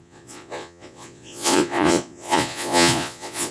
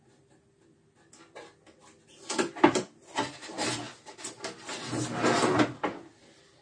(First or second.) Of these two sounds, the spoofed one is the first